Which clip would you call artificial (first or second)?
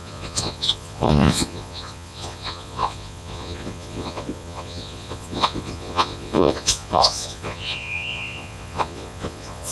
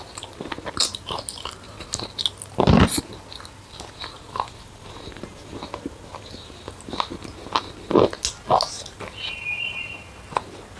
first